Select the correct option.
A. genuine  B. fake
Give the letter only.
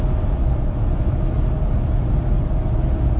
A